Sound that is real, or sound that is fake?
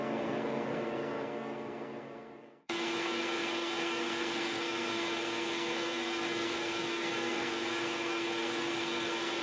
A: fake